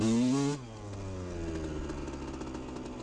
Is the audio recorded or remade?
recorded